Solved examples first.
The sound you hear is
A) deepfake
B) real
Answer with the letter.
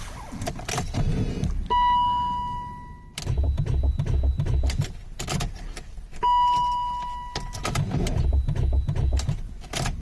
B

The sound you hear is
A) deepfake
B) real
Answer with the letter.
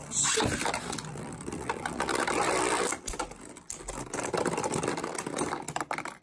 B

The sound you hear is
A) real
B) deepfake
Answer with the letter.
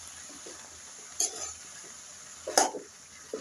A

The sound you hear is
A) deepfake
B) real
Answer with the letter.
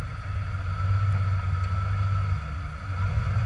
B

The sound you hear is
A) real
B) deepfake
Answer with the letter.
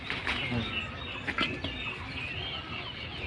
A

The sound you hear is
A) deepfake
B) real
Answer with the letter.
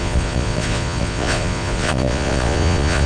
A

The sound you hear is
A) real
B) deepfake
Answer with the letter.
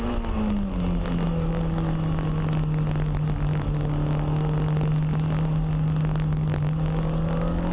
A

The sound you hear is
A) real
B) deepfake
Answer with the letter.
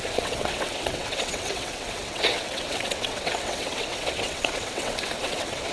B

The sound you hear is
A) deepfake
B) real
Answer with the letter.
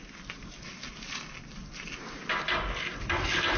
B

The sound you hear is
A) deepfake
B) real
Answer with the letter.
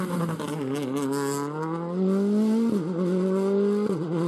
B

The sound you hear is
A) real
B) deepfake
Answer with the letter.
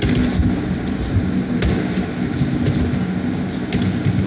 A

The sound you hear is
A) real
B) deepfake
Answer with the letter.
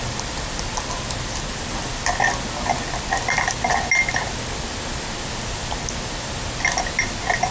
A